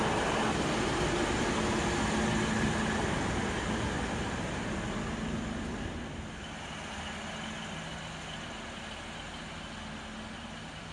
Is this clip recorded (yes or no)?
yes